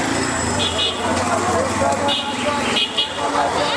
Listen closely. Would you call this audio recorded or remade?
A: recorded